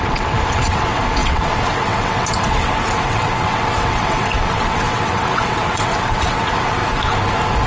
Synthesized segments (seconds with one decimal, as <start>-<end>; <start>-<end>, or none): 0.0-6.8